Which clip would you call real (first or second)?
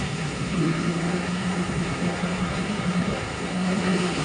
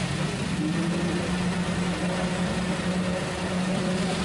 second